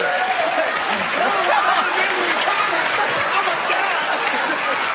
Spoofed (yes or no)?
yes